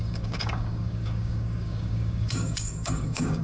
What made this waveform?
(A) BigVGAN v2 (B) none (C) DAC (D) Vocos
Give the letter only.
C